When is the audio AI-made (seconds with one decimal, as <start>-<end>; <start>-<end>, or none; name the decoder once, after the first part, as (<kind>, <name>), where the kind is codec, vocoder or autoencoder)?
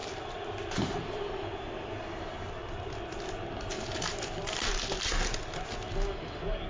0.7-2.6 (vocoder, BigVGAN v2)